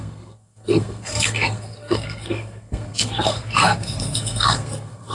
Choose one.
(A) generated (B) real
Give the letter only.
A